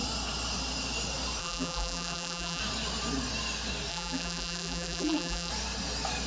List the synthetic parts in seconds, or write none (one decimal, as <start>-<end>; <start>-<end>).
1.4-2.6; 3.9-5.5